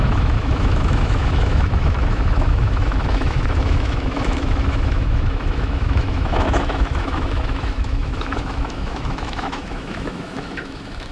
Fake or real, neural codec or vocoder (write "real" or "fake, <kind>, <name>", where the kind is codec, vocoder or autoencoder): fake, autoencoder, DAC-VAE